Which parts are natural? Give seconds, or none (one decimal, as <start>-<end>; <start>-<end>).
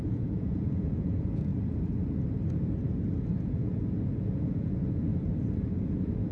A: 1.5-3.2; 5.1-5.7